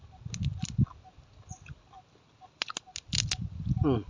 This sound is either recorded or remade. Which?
recorded